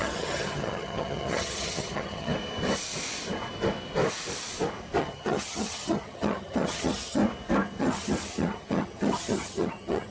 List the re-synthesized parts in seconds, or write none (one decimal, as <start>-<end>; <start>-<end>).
0.0-2.3; 5.0-7.2; 7.8-10.1